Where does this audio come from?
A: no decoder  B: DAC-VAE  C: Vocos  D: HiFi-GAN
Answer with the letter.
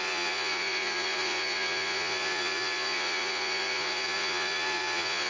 C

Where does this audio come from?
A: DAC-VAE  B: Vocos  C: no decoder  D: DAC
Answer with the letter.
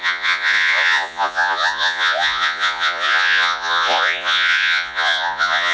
B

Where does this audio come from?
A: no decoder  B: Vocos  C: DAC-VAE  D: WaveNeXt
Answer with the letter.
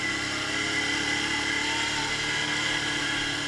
A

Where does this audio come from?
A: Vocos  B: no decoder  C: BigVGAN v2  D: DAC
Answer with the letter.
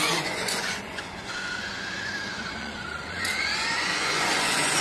A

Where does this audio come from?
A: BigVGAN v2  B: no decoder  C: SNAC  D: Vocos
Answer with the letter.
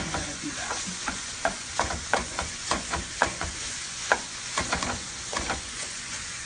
D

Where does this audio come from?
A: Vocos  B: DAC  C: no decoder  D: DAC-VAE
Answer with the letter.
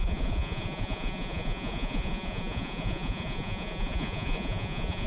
A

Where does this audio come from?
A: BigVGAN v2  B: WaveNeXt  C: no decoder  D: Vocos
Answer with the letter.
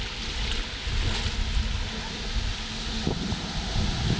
C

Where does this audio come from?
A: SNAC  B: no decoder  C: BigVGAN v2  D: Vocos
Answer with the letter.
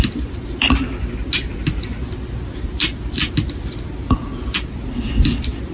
B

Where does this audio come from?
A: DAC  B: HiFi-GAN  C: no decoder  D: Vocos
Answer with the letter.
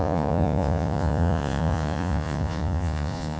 D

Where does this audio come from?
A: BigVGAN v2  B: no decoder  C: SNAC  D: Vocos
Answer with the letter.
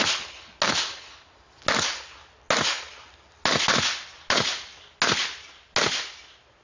B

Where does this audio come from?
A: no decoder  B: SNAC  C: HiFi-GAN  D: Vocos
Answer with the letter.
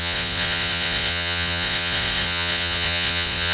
D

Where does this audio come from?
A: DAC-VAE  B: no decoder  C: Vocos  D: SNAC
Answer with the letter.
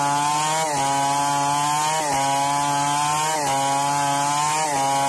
B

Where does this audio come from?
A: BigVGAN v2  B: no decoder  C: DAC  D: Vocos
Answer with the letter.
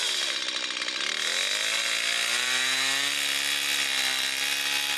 B